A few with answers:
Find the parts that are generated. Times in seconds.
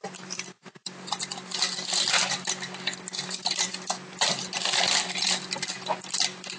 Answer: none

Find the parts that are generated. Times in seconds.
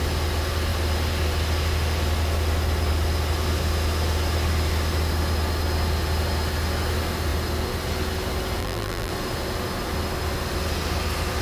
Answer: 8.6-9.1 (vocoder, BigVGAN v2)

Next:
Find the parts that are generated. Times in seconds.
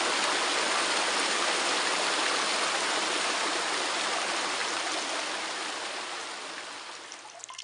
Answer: none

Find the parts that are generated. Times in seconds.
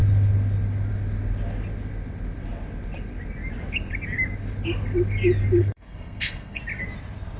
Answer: 5.6-6.6 (codec, SNAC)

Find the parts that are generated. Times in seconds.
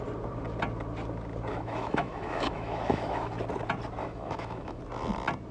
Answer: 1.5-3.3 (autoencoder, DAC-VAE); 4.0-4.8